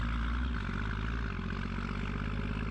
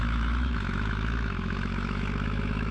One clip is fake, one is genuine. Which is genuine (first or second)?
first